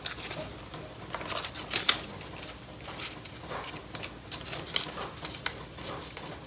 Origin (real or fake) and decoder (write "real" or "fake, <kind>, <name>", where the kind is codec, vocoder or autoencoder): real